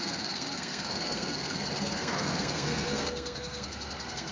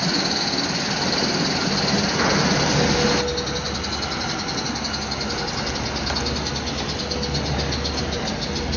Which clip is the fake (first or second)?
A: first